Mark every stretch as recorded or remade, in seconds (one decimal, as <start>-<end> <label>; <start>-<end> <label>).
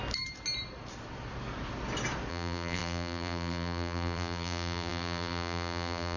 0.0-2.3 recorded; 2.3-6.2 remade